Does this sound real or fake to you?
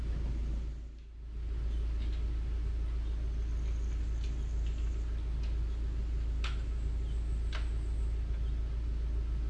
real